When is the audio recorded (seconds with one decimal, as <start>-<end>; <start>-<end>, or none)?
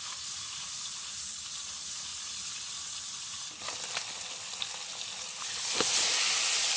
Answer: 0.0-6.8